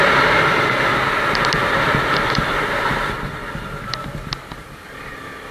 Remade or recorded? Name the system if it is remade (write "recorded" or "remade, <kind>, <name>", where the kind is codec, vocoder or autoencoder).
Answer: recorded